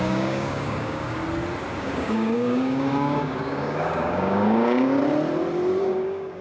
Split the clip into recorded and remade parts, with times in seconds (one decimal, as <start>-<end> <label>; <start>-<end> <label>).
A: 0.0-1.2 remade; 1.2-1.8 recorded; 1.8-5.0 remade; 5.0-5.8 recorded; 5.8-6.4 remade